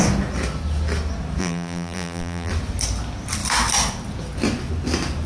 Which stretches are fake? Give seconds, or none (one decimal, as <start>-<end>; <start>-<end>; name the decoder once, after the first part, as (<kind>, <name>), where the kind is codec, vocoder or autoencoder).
1.4-2.5 (vocoder, BigVGAN v2)